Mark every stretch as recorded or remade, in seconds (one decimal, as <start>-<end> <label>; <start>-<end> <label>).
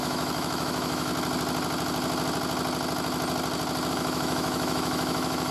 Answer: 0.0-1.1 remade; 1.1-3.9 recorded; 3.9-5.5 remade